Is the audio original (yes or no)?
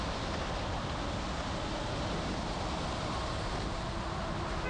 yes